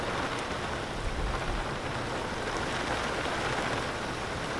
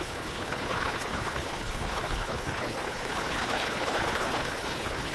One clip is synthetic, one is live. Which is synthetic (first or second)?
second